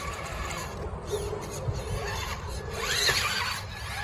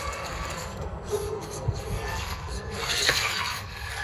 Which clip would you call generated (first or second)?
second